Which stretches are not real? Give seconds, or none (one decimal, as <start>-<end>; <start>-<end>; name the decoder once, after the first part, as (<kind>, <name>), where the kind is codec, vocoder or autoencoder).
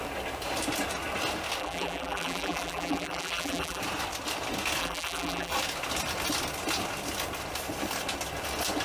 1.6-3.8 (vocoder, BigVGAN v2); 4.8-5.5